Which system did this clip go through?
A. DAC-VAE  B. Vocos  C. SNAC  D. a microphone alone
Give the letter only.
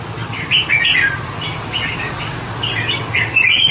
D